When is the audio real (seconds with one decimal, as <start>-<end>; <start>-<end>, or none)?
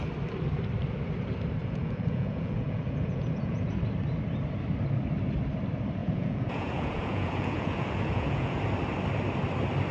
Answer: 0.0-1.6; 3.7-6.0; 8.6-9.9